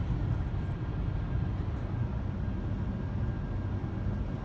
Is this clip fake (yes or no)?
no